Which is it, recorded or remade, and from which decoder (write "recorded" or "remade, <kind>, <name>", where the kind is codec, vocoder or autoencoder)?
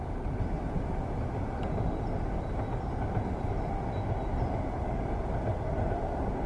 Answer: recorded